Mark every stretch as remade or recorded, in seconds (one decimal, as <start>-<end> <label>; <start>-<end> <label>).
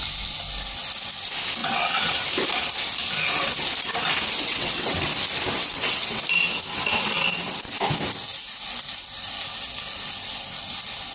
0.0-1.6 recorded; 1.6-2.1 remade; 2.1-4.4 recorded; 4.4-5.1 remade; 5.1-5.6 recorded; 5.6-6.2 remade; 6.2-11.1 recorded